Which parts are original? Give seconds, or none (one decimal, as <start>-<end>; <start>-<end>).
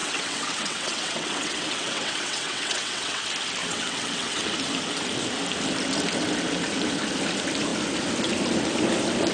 3.2-3.6; 4.5-9.3